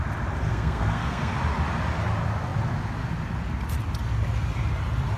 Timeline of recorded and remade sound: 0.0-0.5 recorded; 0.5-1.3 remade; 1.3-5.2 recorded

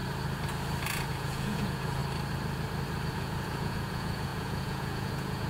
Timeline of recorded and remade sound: 0.0-0.9 recorded; 0.9-2.0 remade; 2.0-3.1 recorded; 3.1-5.5 remade

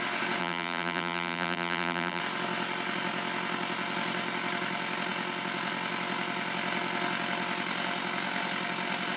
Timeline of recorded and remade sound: 0.0-0.4 recorded; 0.4-2.2 remade; 2.2-9.2 recorded

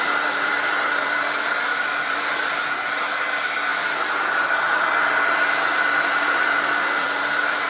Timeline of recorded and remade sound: 0.0-7.7 remade

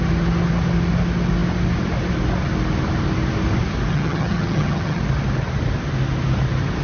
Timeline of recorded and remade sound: 0.0-3.9 recorded; 3.9-5.0 remade; 5.0-6.8 recorded

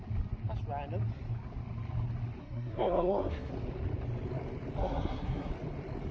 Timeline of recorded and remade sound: 0.0-2.4 recorded; 2.4-3.5 remade; 3.5-4.8 recorded; 4.8-5.5 remade; 5.5-6.1 recorded